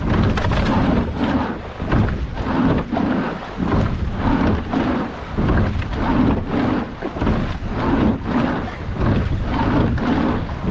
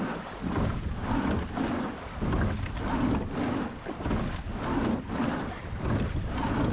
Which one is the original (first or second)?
first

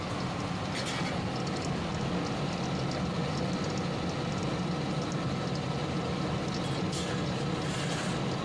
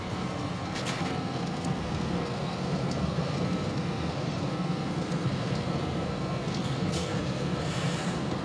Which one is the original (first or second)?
first